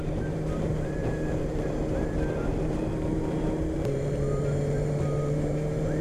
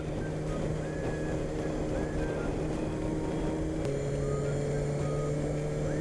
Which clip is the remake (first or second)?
first